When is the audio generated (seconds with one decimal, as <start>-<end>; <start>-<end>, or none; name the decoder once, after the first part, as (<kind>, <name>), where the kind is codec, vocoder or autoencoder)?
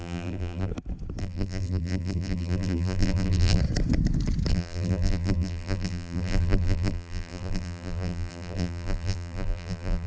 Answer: 0.0-0.7 (vocoder, BigVGAN v2); 1.2-3.6; 4.5-10.1